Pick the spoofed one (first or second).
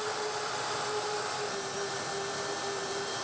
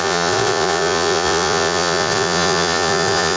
second